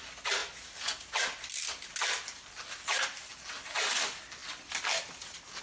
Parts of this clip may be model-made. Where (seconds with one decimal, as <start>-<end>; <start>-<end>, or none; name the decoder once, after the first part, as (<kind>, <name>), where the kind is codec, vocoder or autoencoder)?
4.4-5.6 (vocoder, BigVGAN v2)